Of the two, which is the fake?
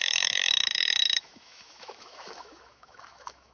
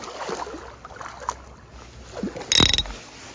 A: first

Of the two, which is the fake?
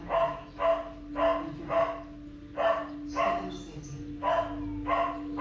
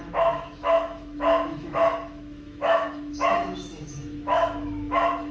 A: second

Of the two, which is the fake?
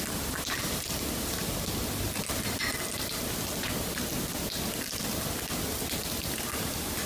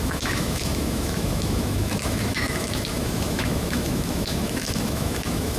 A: second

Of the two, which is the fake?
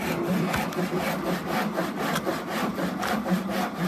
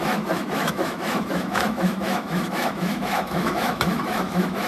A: second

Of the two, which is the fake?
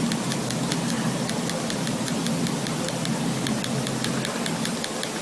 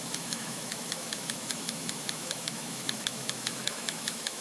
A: second